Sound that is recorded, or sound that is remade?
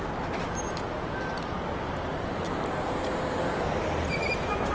recorded